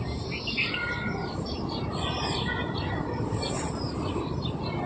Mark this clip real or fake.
real